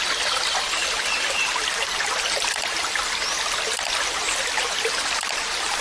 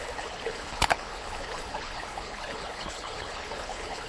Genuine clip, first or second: first